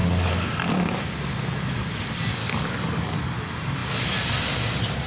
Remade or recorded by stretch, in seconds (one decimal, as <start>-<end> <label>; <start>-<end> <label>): 0.0-2.4 recorded; 2.4-3.2 remade; 3.2-5.1 recorded